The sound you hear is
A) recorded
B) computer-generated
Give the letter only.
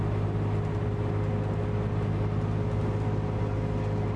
A